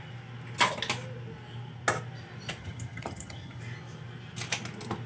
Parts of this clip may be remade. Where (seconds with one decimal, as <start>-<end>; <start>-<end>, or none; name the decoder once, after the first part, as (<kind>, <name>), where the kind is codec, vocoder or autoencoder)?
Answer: 2.6-3.6 (vocoder, HiFi-GAN)